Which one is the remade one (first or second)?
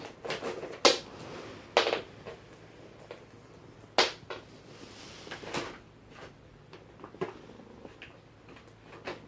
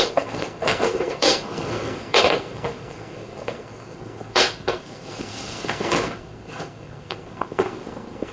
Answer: second